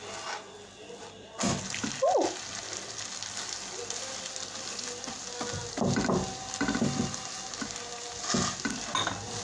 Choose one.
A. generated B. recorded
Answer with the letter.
B